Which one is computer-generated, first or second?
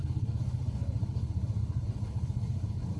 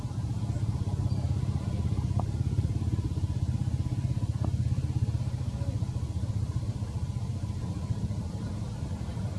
first